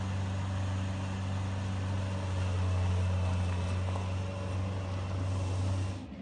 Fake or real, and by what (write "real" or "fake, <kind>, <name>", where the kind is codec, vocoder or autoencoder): real